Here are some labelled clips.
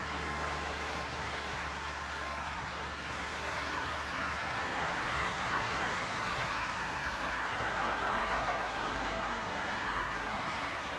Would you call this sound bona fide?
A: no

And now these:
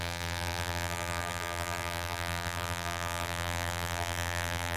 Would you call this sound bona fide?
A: no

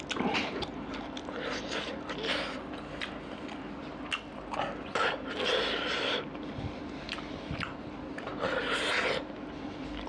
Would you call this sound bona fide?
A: yes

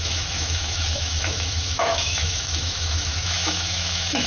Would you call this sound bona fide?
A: no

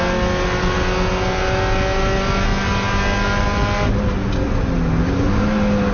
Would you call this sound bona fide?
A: yes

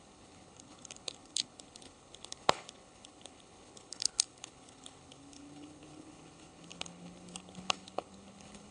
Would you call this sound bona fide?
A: no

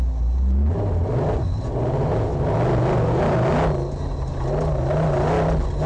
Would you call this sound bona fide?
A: yes